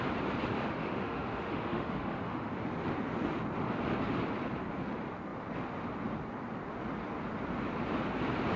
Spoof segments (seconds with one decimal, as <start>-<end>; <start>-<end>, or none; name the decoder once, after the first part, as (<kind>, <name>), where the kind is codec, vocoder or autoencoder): 0.5-2.5 (autoencoder, DAC-VAE)